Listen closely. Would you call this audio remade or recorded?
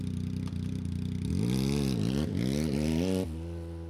recorded